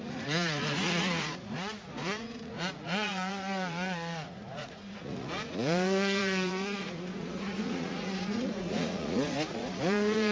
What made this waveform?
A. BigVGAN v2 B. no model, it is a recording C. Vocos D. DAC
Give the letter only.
C